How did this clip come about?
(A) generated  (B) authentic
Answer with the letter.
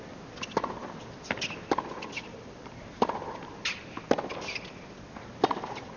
B